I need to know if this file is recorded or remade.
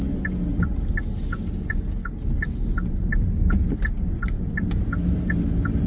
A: recorded